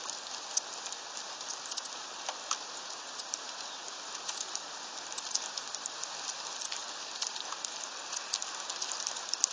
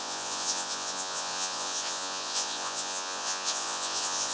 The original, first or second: first